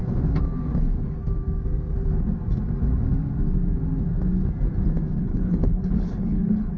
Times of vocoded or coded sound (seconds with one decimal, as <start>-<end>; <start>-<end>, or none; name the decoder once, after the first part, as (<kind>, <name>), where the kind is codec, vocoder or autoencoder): 5.2-6.8 (codec, HILCodec)